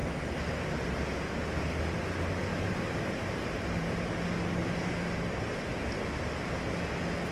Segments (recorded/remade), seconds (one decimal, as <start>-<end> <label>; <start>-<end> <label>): 0.0-2.5 recorded; 2.5-4.1 remade; 4.1-7.3 recorded